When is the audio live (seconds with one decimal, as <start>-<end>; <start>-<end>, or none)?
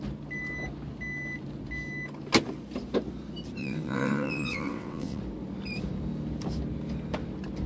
0.0-3.6; 5.2-7.7